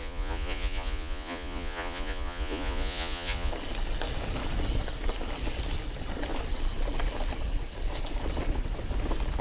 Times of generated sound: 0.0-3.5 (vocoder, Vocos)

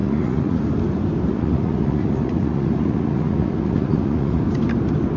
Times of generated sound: 0.0-0.6 (vocoder, Vocos); 1.3-4.4

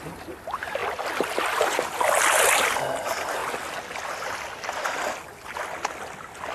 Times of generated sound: none

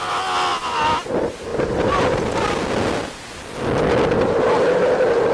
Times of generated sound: none

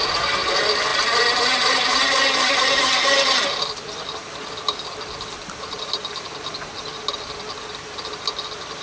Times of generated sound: none

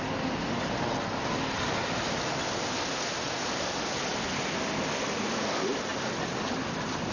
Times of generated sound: none

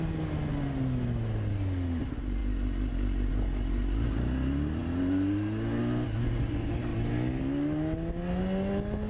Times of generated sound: none

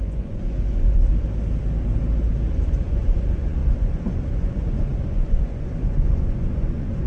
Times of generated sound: 0.0-1.0 (vocoder, Vocos); 2.5-7.1